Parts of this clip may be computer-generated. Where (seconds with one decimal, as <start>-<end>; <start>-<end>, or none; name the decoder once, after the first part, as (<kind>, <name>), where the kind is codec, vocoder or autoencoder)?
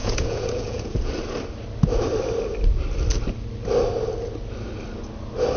0.0-1.1 (vocoder, Vocos)